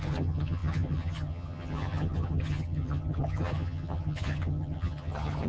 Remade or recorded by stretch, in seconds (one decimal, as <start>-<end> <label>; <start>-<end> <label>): 0.0-5.5 remade